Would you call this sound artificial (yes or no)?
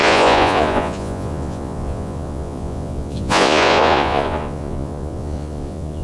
yes